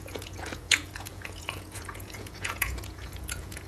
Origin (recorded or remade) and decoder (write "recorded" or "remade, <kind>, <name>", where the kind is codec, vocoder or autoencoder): remade, vocoder, Vocos